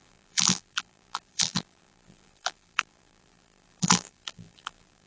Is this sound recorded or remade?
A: remade